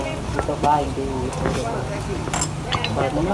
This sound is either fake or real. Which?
real